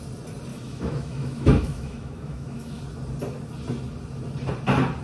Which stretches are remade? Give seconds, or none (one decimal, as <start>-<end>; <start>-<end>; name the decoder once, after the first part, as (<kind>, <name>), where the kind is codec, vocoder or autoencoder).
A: 0.5-2.8 (autoencoder, DAC-VAE)